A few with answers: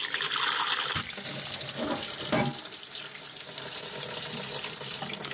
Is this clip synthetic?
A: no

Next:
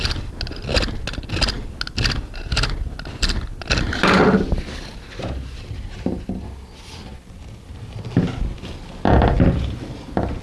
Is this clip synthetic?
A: no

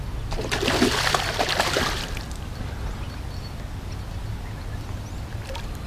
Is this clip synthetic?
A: no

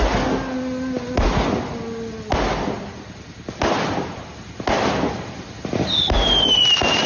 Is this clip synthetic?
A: no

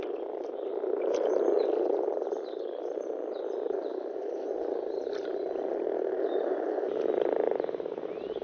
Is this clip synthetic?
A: no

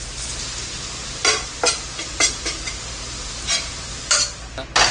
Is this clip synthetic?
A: no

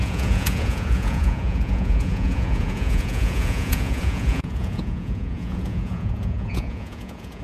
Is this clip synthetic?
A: yes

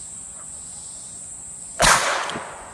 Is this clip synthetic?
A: yes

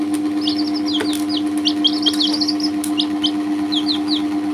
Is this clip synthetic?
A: no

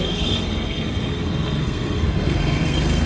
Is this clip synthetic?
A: yes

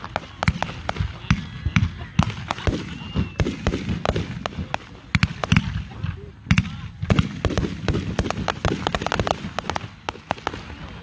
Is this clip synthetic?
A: no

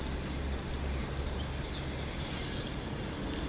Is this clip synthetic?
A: no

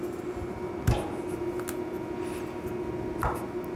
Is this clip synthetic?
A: no